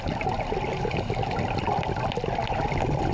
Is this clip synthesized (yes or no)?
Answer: no